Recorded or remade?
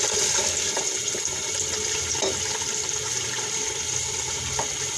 recorded